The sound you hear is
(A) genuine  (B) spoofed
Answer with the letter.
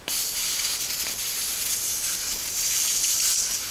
A